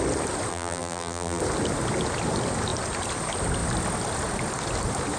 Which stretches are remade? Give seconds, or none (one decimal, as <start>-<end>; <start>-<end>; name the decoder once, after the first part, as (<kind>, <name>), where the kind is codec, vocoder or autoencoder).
0.5-1.4 (vocoder, BigVGAN v2)

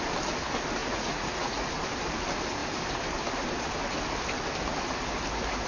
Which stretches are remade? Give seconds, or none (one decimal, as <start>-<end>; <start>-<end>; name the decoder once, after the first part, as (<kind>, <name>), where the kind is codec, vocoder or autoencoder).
0.8-1.7 (vocoder, Vocos)

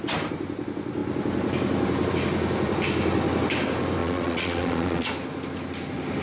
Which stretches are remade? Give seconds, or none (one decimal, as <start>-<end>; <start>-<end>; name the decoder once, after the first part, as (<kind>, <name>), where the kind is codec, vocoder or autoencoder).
4.0-5.1 (vocoder, Vocos)

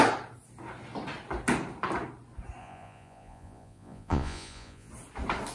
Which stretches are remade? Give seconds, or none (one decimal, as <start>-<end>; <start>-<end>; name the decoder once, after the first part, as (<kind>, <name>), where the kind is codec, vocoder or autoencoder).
2.6-4.9 (vocoder, Vocos)

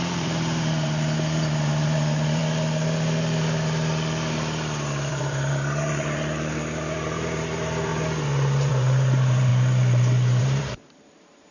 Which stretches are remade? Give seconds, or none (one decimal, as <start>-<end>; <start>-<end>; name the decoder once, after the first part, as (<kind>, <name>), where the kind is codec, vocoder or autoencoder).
0.0-2.4 (vocoder, BigVGAN v2); 5.1-7.9; 8.7-9.5; 10.4-11.5